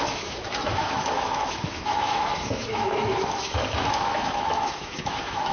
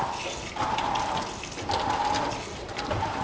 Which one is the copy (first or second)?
first